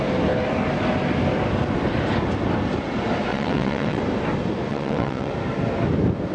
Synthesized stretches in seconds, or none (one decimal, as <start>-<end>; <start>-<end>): 3.3-4.0; 4.7-5.3